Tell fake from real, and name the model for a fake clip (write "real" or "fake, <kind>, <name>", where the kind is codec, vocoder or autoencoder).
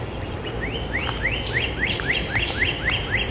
real